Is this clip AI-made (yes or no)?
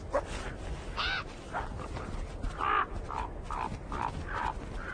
no